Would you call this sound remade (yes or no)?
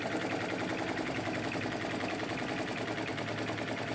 no